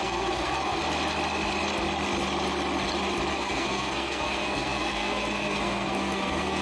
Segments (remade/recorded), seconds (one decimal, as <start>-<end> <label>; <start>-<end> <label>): 0.0-0.8 remade; 0.8-3.3 recorded; 3.3-6.6 remade